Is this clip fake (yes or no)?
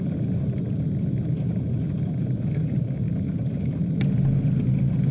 no